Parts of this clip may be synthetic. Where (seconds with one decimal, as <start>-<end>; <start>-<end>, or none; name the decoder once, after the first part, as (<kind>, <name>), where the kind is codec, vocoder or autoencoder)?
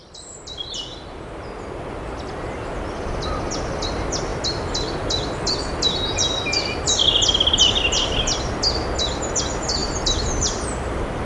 0.0-0.6 (vocoder, BigVGAN v2); 9.8-11.2